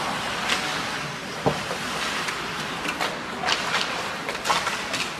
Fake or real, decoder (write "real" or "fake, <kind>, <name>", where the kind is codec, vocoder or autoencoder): real